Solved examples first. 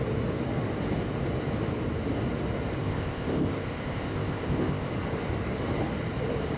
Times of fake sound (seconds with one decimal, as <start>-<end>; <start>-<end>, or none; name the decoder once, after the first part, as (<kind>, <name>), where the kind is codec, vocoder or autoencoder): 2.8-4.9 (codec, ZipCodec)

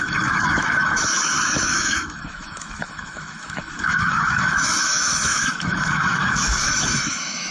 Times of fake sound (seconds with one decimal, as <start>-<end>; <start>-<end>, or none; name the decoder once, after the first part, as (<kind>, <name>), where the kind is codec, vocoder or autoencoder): 0.0-7.5 (autoencoder, DAC-VAE)

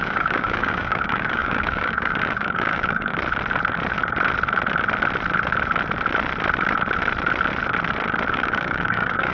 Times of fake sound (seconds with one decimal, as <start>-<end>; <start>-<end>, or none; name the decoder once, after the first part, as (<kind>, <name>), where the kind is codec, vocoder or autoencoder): 0.0-3.1 (codec, DAC); 8.3-9.3

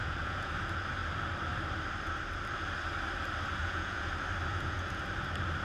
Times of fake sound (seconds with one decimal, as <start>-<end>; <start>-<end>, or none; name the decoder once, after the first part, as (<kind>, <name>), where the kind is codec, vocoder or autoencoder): 0.0-0.5 (vocoder, Vocos); 3.6-4.1; 4.5-5.0

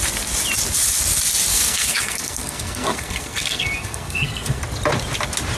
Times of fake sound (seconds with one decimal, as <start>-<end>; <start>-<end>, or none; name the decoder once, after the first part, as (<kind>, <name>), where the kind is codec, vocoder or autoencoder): 1.5-4.6 (codec, SNAC)